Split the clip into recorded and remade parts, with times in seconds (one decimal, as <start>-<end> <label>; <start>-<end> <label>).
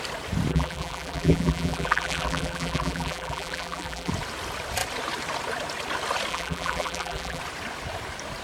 0.0-0.5 recorded; 0.5-4.1 remade; 4.1-6.3 recorded; 6.3-7.4 remade; 7.4-8.4 recorded